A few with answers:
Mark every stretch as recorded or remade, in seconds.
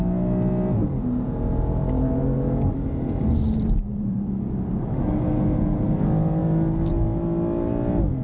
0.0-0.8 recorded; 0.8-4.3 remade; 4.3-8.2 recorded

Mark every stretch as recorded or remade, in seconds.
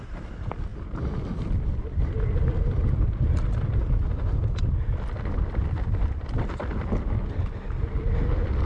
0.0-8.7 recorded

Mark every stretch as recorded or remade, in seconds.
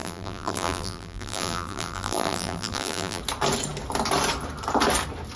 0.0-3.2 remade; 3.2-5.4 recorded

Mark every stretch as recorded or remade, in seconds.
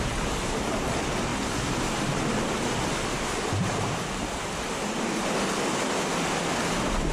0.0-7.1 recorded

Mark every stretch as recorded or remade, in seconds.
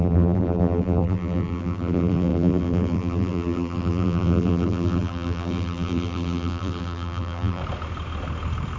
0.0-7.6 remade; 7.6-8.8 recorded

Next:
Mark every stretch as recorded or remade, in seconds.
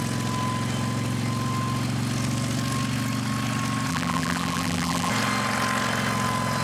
0.0-3.9 recorded; 3.9-5.1 remade; 5.1-6.6 recorded